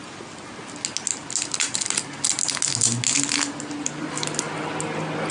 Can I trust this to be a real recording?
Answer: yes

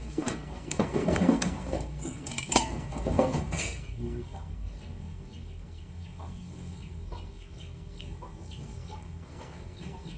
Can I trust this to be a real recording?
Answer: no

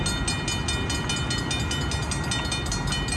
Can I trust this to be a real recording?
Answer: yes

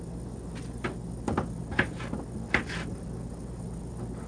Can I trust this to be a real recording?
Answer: yes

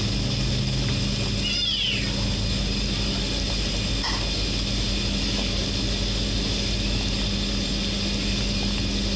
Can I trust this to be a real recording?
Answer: yes